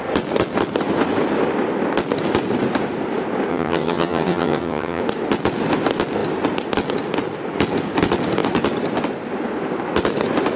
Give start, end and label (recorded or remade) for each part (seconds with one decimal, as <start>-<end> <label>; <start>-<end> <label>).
0.0-3.5 recorded; 3.5-5.0 remade; 5.0-10.6 recorded